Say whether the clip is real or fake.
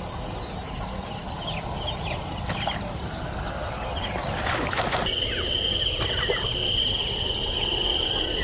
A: real